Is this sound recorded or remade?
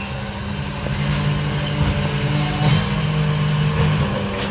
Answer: recorded